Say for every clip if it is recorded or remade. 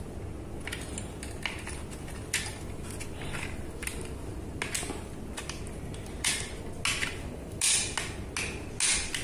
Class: recorded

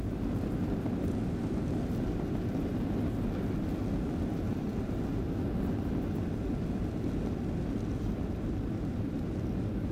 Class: recorded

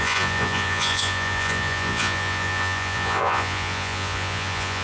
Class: remade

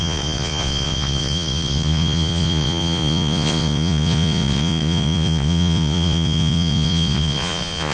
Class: remade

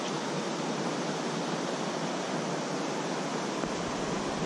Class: recorded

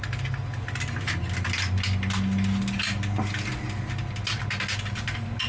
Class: recorded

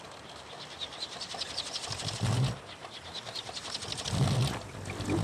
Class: recorded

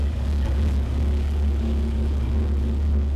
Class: remade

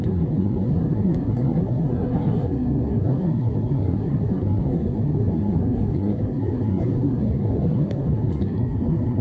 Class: remade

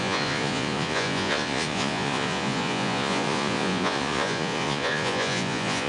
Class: remade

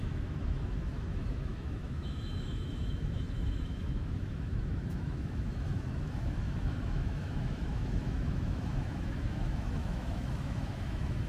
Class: remade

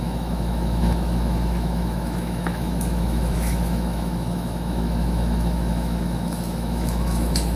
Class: remade